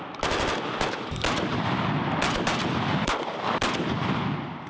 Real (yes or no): yes